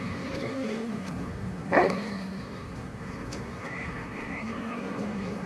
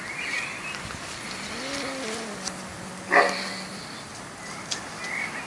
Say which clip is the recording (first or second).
second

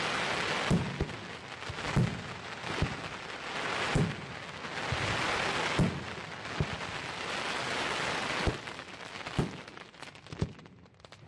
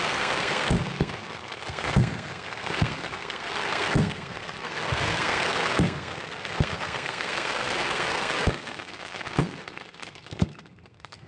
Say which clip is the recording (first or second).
first